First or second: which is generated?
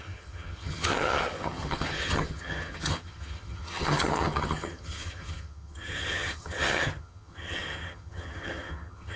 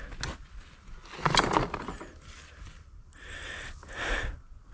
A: first